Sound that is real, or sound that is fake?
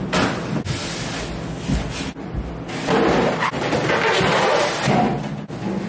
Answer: real